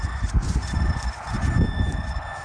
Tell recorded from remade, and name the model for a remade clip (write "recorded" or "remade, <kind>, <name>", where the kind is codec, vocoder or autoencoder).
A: remade, vocoder, Vocos